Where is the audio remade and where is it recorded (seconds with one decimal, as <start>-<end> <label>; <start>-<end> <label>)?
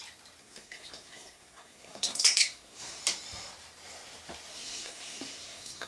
0.0-0.4 recorded; 0.4-3.0 remade; 3.0-4.5 recorded; 4.5-5.9 remade